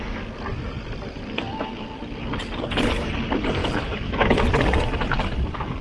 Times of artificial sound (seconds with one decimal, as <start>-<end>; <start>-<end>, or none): 3.6-4.5